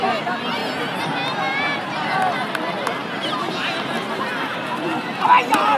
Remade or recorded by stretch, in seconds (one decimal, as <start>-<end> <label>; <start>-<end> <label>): 0.0-5.8 recorded